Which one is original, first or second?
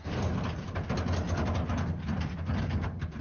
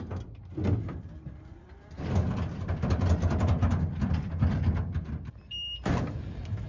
first